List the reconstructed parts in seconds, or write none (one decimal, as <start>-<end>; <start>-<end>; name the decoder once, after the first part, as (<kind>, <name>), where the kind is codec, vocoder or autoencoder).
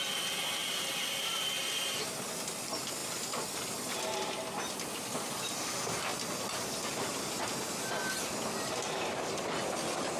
0.6-1.5 (vocoder, BigVGAN v2)